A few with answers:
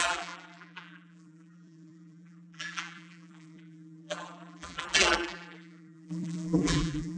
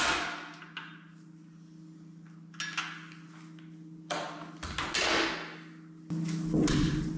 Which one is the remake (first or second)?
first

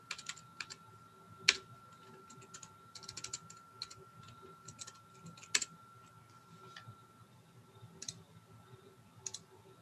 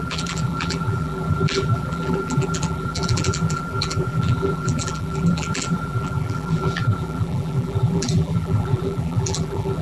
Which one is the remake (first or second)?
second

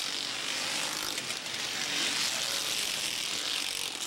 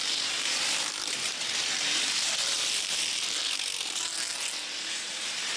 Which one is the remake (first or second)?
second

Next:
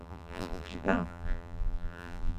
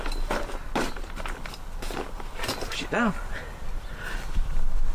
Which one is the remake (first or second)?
first